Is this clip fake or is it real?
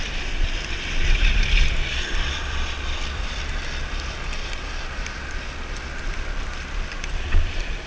fake